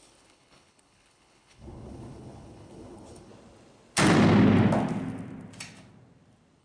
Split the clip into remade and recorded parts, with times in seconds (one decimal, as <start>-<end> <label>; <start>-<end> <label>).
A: 0.0-3.3 remade; 3.3-6.6 recorded